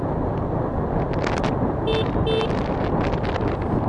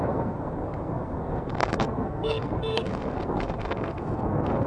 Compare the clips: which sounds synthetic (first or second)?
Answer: second